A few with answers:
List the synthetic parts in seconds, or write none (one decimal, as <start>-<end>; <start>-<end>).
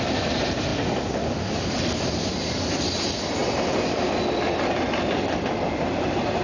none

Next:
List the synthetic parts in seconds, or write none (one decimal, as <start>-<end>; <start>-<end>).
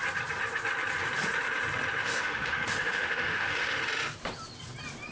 2.0-3.8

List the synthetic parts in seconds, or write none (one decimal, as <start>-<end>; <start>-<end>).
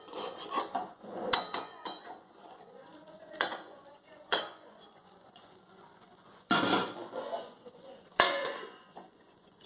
0.0-9.7